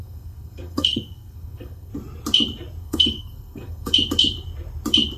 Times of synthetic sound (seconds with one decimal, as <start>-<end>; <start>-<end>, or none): 0.0-1.9; 2.8-3.9